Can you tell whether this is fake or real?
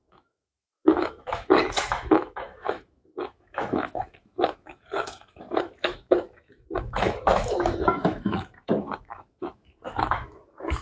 fake